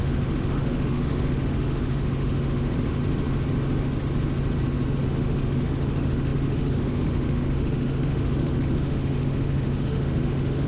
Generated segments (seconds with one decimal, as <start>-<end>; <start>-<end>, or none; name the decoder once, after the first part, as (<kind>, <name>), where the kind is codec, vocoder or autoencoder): 0.0-3.0 (autoencoder, DAC-VAE); 5.1-10.7